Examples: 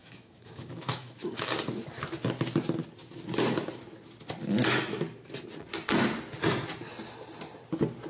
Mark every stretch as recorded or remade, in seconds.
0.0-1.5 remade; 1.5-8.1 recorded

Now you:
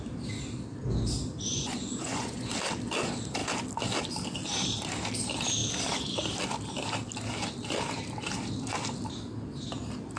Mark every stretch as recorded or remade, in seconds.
0.0-1.5 recorded; 1.5-2.5 remade; 2.5-10.2 recorded

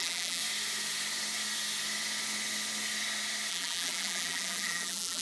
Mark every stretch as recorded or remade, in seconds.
0.0-0.4 remade; 0.4-3.5 recorded; 3.5-5.2 remade

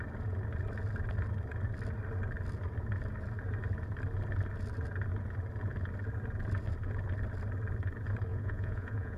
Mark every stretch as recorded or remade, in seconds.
0.0-8.3 recorded; 8.3-9.2 remade